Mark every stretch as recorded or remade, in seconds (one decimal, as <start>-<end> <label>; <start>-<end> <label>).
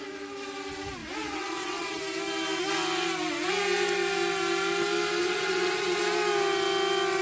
0.0-1.0 recorded; 1.0-2.0 remade; 2.0-5.2 recorded; 5.2-6.0 remade; 6.0-7.2 recorded